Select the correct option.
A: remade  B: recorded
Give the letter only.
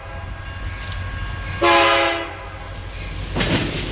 B